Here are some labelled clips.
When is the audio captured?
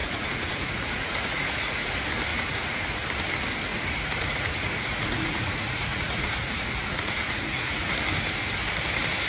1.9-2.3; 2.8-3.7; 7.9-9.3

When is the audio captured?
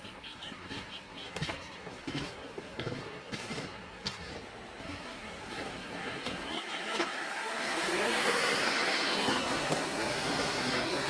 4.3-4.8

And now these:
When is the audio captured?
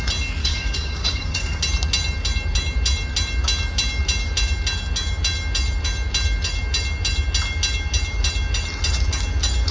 0.0-0.4; 1.6-9.7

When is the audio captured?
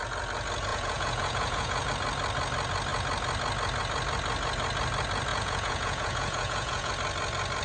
0.0-0.7; 1.9-5.3; 6.9-7.6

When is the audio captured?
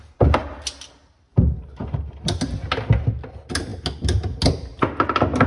0.0-5.5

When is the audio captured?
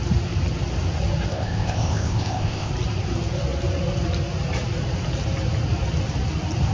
0.0-1.3; 2.7-6.7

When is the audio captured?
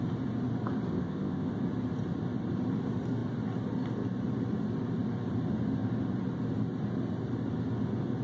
0.0-0.9; 1.5-8.2